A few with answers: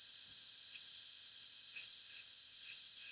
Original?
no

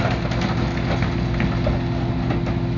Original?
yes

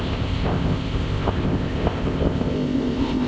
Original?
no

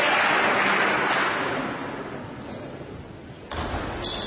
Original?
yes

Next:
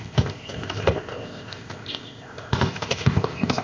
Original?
no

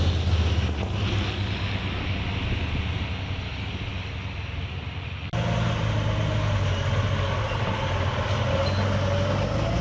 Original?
yes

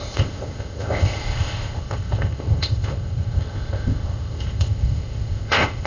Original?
no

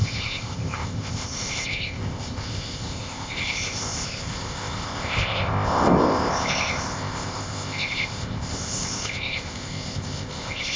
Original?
no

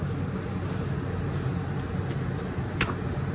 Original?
yes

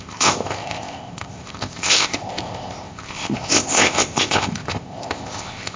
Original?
no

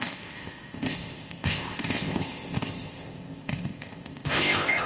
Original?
no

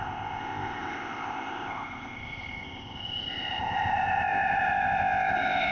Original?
no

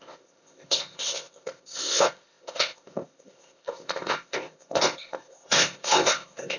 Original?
no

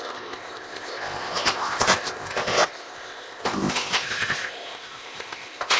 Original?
no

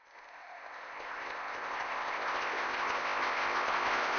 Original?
no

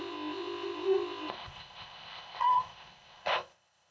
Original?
no